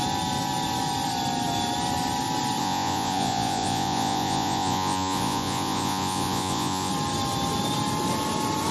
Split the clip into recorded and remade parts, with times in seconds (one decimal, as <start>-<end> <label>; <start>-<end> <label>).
0.0-2.6 recorded; 2.6-6.9 remade; 6.9-8.7 recorded